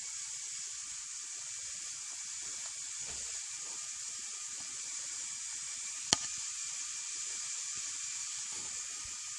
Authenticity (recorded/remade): recorded